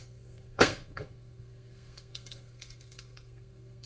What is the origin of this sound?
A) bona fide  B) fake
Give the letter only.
B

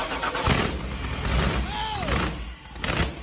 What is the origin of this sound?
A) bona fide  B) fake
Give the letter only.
A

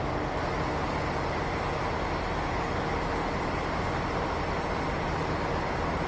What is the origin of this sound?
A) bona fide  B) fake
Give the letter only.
A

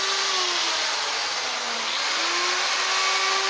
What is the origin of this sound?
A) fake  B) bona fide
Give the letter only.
B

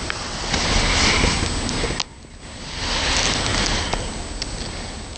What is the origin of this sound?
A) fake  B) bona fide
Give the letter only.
B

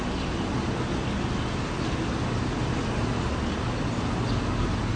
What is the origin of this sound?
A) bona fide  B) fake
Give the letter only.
A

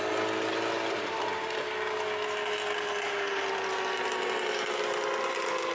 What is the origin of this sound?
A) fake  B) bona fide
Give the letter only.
B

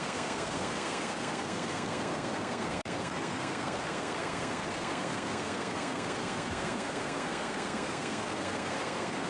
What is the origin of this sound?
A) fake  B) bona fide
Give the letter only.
A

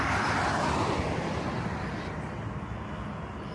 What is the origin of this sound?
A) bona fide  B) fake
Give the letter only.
A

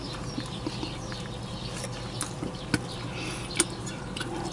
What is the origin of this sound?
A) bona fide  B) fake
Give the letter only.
A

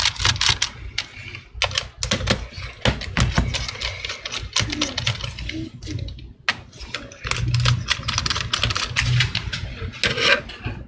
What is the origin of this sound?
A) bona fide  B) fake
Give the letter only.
A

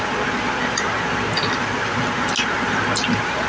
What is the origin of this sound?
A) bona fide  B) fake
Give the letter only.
A